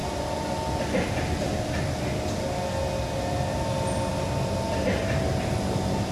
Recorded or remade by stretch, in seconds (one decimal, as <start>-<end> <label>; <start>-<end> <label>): 0.0-6.1 recorded